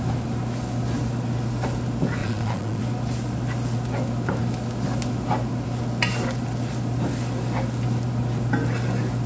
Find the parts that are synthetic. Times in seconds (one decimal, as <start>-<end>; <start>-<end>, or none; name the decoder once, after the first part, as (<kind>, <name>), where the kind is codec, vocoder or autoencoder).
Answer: 2.2-2.8 (vocoder, Vocos)